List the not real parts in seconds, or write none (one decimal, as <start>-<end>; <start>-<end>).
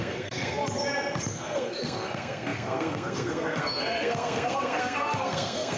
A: 0.0-0.6; 1.2-5.8